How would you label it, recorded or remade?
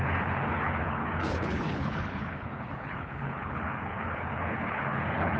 remade